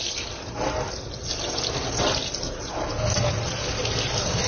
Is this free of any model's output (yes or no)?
yes